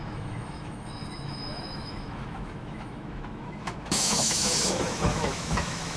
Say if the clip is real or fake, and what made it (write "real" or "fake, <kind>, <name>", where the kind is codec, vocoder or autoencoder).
fake, autoencoder, DAC-VAE